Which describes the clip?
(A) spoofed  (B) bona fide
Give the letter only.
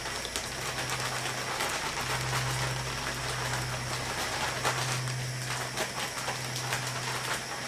B